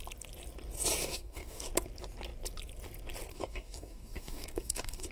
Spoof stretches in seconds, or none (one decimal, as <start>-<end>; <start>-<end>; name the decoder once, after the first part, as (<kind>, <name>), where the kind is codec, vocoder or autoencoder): 1.0-1.7 (codec, DAC); 3.3-5.1